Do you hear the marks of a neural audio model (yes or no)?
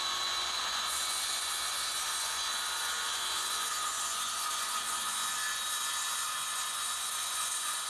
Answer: yes